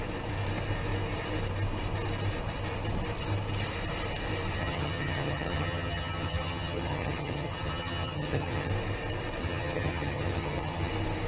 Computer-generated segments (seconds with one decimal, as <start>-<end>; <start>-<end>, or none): 4.6-8.7; 9.4-10.9